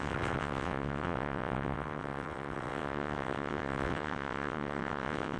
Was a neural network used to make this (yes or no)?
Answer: yes